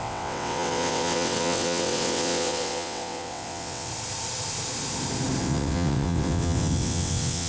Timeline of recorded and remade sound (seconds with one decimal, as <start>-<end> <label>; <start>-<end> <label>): 0.0-3.9 remade; 3.9-5.4 recorded; 5.4-7.5 remade

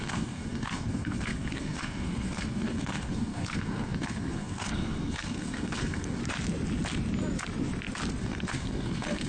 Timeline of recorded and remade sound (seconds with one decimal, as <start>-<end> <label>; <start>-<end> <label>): 0.0-6.2 remade; 6.2-8.2 recorded; 8.2-9.3 remade

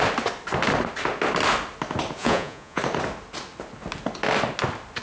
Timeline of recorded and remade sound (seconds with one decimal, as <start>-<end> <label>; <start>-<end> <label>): 0.0-2.2 recorded; 2.2-2.8 remade; 2.8-5.0 recorded

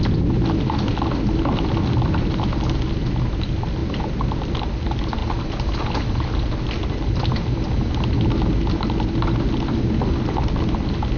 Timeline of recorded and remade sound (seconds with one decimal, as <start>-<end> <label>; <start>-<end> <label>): 0.0-11.2 recorded

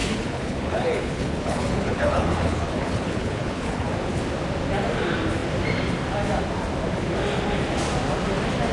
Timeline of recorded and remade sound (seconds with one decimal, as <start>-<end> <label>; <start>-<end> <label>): 0.0-3.9 remade; 3.9-8.7 recorded

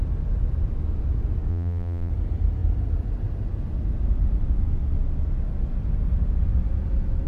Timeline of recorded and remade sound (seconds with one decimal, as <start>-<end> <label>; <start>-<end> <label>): 0.0-1.5 recorded; 1.5-2.1 remade; 2.1-7.3 recorded